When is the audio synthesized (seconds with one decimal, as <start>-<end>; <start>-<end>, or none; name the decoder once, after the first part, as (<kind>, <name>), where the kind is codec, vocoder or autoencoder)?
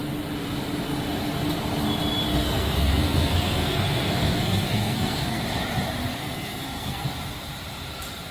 2.3-5.4 (codec, SNAC); 6.2-7.1